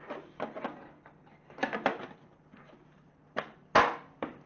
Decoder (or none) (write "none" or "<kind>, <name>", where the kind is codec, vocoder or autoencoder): none